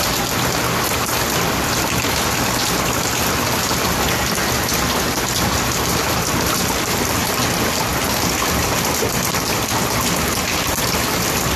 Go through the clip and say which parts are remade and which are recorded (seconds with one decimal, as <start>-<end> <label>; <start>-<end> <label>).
0.0-11.6 recorded